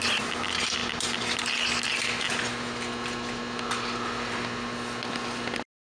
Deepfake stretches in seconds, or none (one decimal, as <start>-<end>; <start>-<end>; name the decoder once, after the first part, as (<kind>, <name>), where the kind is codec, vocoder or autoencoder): none